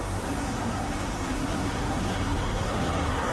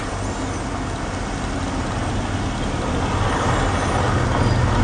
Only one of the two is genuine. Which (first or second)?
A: second